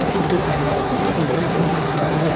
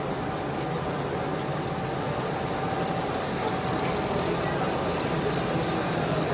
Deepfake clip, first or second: first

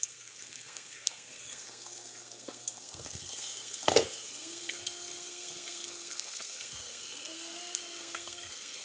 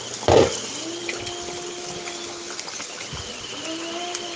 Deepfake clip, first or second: first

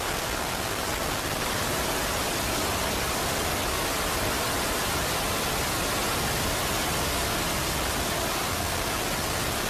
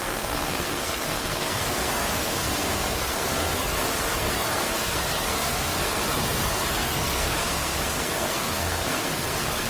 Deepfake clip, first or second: second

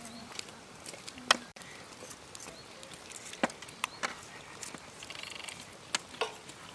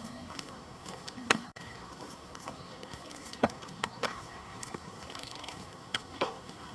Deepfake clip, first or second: second